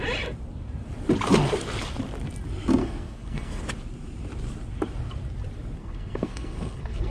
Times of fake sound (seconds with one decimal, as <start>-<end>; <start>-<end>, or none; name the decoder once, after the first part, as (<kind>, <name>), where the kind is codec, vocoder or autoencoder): 2.8-3.6 (codec, SNAC); 5.8-7.1